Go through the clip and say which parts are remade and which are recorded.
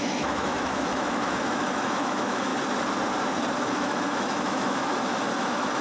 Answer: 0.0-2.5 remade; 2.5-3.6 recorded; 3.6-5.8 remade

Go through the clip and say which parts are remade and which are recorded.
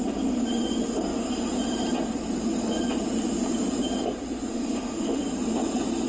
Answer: 0.0-4.5 recorded; 4.5-5.2 remade; 5.2-6.1 recorded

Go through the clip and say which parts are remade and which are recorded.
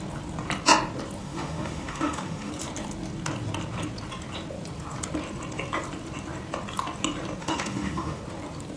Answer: 0.0-1.2 recorded; 1.2-2.5 remade; 2.5-7.4 recorded; 7.4-8.2 remade; 8.2-8.8 recorded